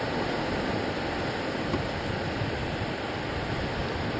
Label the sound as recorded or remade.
recorded